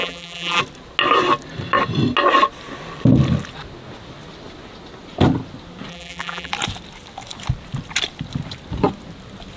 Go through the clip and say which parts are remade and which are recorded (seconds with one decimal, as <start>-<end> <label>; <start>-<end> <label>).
0.0-0.6 remade; 0.6-5.9 recorded; 5.9-6.5 remade; 6.5-9.6 recorded